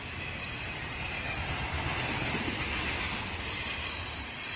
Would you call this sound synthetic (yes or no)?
no